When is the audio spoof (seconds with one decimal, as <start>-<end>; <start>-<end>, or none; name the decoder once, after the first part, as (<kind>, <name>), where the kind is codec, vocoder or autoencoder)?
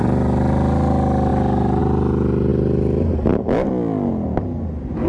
none